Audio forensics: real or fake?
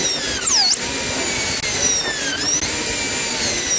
real